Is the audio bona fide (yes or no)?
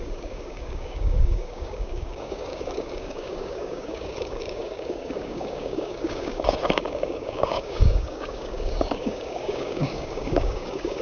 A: no